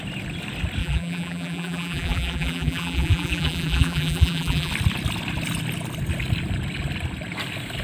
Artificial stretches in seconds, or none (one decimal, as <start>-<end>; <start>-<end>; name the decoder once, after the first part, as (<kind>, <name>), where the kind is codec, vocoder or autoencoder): 0.8-4.7 (vocoder, BigVGAN v2)